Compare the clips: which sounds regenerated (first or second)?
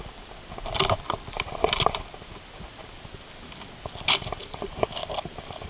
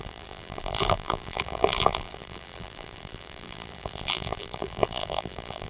second